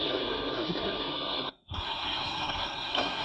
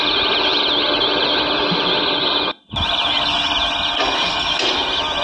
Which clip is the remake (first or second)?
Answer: first